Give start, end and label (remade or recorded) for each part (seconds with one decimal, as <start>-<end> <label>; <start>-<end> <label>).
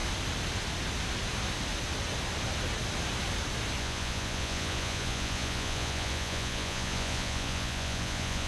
0.0-3.8 recorded; 3.8-8.5 remade